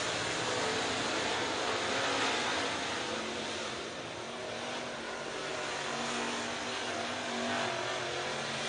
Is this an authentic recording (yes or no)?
yes